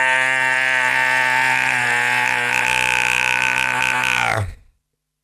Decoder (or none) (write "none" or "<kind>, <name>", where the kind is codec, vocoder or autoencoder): none